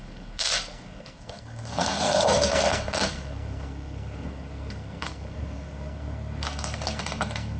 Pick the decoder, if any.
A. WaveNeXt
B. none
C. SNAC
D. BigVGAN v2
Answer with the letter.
C